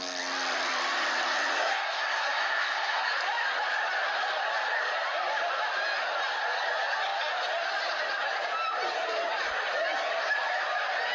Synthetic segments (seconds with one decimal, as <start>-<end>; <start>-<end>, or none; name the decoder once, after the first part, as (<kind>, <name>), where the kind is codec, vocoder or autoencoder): 1.5-3.1 (codec, SNAC)